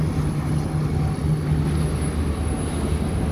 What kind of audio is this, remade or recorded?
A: recorded